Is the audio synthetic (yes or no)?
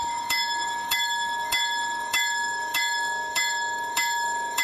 yes